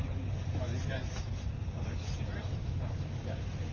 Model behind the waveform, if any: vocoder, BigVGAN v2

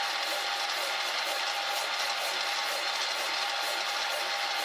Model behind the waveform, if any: none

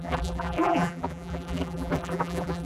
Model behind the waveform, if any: vocoder, BigVGAN v2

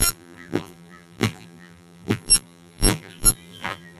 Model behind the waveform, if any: vocoder, BigVGAN v2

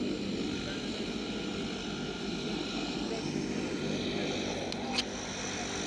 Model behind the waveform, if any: none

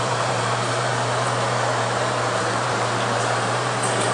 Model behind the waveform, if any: vocoder, BigVGAN v2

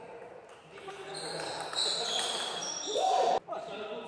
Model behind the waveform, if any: none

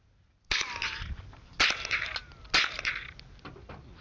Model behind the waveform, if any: none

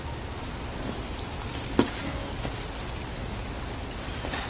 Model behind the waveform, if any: none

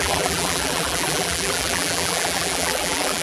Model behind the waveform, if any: vocoder, BigVGAN v2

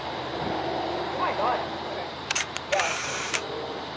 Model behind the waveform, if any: vocoder, BigVGAN v2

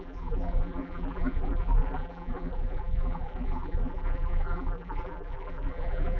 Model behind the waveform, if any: vocoder, BigVGAN v2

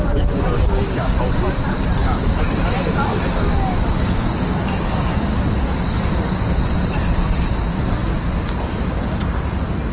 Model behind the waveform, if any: none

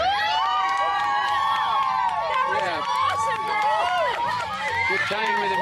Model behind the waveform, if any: vocoder, BigVGAN v2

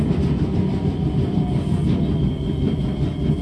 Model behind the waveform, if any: none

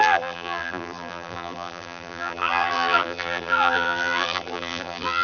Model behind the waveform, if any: vocoder, BigVGAN v2